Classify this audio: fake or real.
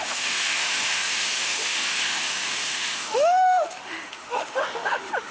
fake